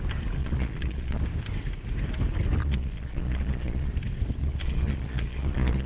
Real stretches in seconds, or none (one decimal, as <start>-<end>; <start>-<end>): 0.0-0.4; 1.2-2.6; 3.9-4.4